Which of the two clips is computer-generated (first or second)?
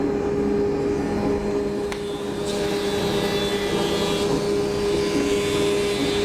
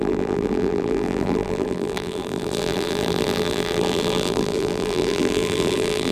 second